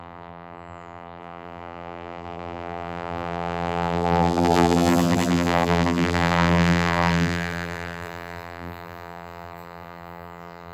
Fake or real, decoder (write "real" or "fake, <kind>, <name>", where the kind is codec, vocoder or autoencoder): fake, vocoder, BigVGAN v2